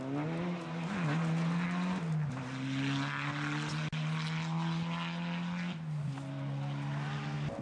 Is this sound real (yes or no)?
yes